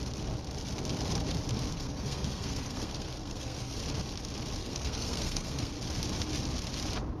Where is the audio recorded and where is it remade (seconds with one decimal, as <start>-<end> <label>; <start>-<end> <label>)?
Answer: 0.0-1.7 recorded; 1.7-3.8 remade; 3.8-4.6 recorded; 4.6-5.7 remade; 5.7-7.2 recorded